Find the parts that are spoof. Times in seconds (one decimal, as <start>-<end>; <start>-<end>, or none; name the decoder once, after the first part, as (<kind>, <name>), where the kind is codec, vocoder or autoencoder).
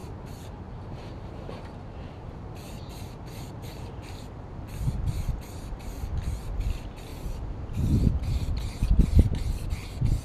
0.0-5.1 (vocoder, BigVGAN v2); 7.1-9.7